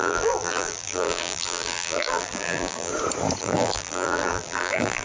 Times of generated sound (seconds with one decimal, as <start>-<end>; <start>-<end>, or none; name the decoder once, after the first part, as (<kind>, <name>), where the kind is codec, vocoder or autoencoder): 0.0-2.9 (vocoder, BigVGAN v2); 3.4-5.0